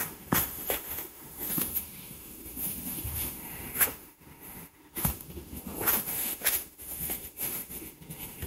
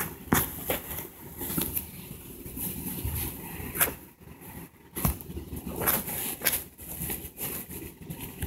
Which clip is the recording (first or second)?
second